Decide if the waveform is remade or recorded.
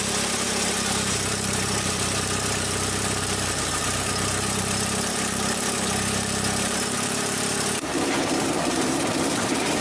remade